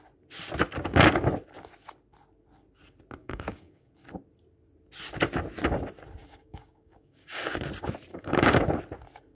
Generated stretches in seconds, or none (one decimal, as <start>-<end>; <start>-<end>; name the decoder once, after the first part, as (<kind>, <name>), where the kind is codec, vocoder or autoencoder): 3.2-3.9 (codec, DAC); 6.2-7.5; 8.1-8.6